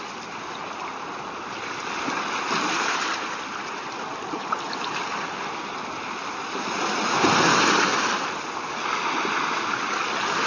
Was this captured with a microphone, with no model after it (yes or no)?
yes